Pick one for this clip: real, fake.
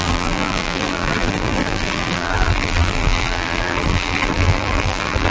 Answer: fake